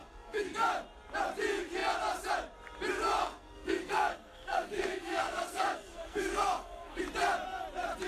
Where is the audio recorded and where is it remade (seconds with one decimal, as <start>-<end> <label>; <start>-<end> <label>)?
0.0-0.7 remade; 0.7-3.2 recorded; 3.2-7.0 remade; 7.0-8.1 recorded